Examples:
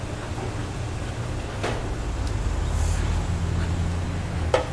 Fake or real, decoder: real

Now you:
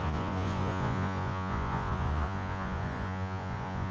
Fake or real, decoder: fake, vocoder, Vocos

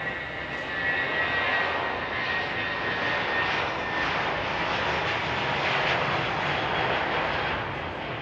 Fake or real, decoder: real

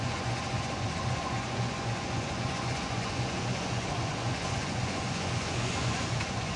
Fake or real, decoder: fake, vocoder, Vocos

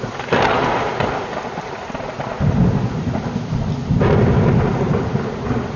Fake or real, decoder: real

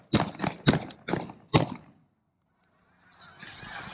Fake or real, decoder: real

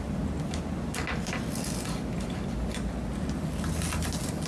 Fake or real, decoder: real